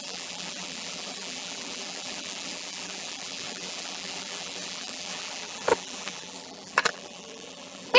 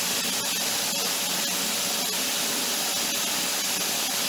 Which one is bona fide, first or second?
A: second